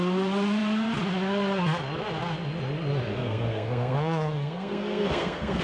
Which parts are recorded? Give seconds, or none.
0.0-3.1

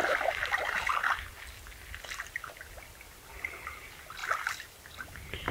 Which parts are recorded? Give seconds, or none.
0.0-3.3; 4.2-5.0